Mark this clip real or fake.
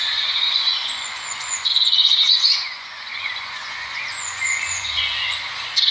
fake